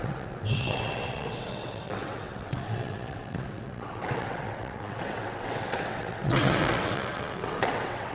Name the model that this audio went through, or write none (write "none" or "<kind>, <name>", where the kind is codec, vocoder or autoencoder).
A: vocoder, WaveNeXt